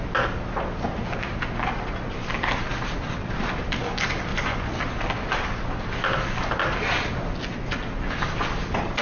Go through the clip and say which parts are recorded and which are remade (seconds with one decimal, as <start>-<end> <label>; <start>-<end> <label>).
0.0-4.3 recorded; 4.3-4.8 remade; 4.8-9.0 recorded